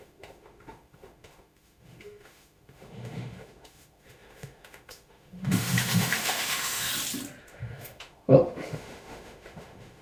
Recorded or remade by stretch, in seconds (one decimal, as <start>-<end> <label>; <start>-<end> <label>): 0.0-6.9 remade; 6.9-7.4 recorded; 7.4-10.0 remade